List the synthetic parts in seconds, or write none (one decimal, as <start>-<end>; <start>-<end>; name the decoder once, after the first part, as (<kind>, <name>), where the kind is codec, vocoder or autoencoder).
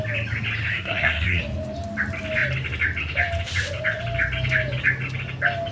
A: 0.7-1.4 (codec, SNAC)